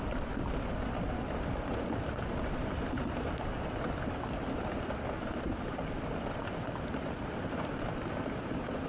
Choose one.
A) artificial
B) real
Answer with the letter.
A